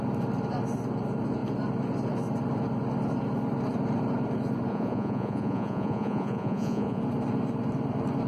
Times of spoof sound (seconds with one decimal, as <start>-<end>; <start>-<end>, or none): 4.7-7.0